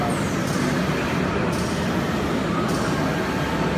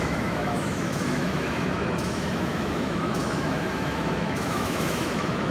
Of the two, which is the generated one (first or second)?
second